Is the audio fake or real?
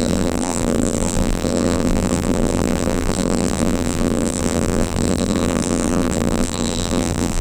fake